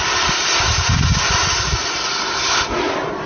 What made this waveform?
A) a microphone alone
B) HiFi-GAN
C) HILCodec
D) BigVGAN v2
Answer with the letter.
A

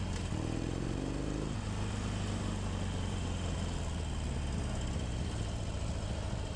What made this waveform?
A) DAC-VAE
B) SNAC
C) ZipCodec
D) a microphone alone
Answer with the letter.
D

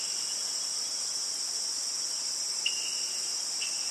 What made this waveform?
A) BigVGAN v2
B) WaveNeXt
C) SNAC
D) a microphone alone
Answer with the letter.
D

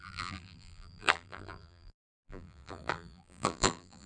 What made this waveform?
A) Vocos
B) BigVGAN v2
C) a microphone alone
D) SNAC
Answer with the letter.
B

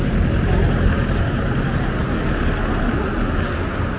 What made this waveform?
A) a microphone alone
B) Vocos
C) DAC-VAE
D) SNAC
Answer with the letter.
A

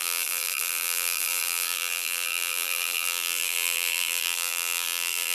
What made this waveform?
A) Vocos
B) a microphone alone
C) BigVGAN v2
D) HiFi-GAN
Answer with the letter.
C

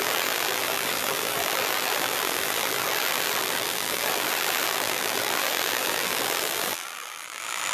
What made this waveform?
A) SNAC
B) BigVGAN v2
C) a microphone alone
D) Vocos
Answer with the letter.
B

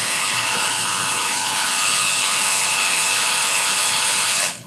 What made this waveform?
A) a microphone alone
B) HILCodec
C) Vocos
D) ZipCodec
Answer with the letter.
B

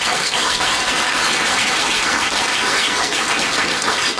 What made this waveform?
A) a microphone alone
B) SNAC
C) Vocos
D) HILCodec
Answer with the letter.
B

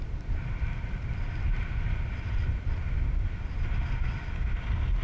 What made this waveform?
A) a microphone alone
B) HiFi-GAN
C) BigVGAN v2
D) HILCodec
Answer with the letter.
A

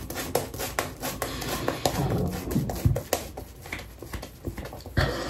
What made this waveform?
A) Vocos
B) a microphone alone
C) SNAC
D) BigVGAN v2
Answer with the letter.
B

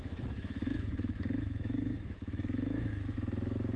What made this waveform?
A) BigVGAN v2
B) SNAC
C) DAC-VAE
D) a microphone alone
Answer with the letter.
C